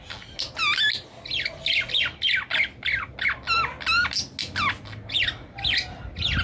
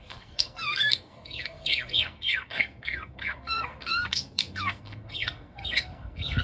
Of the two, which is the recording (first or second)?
first